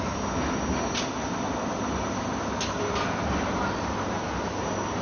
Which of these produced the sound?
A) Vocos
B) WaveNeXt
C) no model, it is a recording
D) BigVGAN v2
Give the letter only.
C